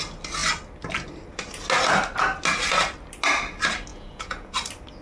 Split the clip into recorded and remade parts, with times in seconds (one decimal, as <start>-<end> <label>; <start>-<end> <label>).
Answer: 0.0-3.9 recorded; 3.9-4.5 remade; 4.5-5.0 recorded